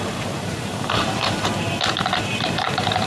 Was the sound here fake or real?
fake